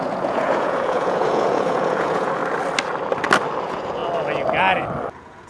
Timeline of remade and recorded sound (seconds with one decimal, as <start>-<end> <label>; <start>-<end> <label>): 0.0-2.4 remade; 2.4-3.6 recorded; 3.6-4.0 remade; 4.0-5.1 recorded; 5.1-5.5 remade